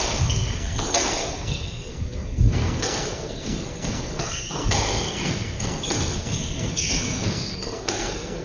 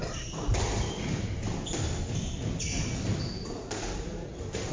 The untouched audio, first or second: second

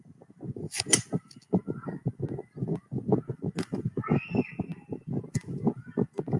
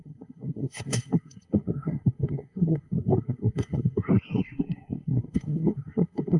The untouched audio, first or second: first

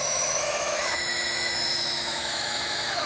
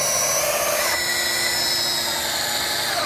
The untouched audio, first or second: second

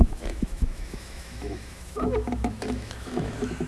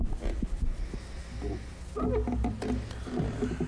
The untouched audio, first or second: second